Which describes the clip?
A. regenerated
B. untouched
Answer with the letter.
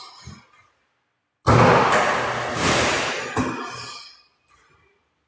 B